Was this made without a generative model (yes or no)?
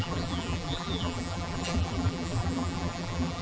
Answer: no